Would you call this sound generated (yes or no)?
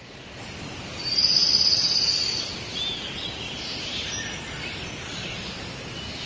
no